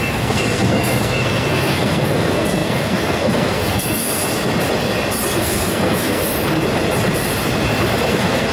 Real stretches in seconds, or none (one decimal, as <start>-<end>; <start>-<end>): 4.2-5.4; 6.2-8.1